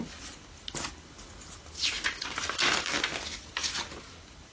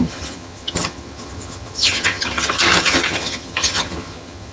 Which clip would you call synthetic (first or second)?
second